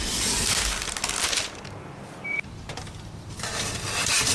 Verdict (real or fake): real